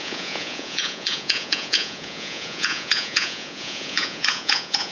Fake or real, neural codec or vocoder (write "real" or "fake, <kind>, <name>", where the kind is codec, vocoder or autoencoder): fake, vocoder, Vocos